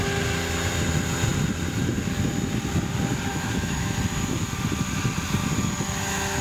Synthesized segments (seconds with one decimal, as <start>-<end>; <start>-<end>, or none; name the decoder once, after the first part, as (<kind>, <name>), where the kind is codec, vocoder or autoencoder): 3.3-4.0 (autoencoder, DAC-VAE)